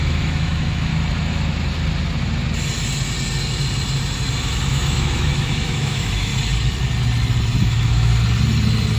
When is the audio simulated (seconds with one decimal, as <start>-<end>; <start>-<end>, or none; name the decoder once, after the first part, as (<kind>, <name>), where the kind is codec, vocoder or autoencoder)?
0.0-0.9 (autoencoder, DAC-VAE); 4.4-6.3; 7.6-8.1